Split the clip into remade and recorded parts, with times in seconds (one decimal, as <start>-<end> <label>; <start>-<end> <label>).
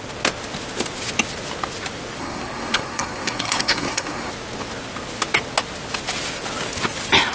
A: 0.0-2.2 recorded; 2.2-4.3 remade; 4.3-7.3 recorded